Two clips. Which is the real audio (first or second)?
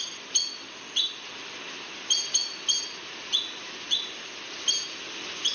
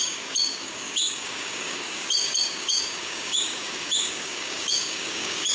first